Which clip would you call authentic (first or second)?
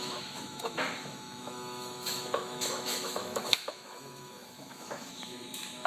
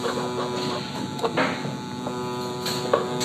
second